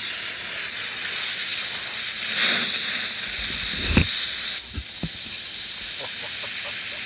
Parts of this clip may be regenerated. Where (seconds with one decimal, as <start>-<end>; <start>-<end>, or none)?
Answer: none